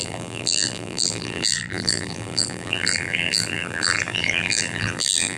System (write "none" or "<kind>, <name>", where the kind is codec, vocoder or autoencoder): vocoder, BigVGAN v2